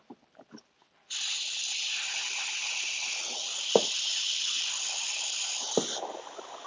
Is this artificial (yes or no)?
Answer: no